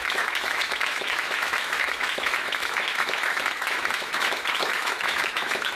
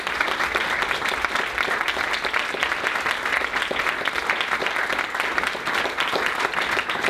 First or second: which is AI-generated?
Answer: first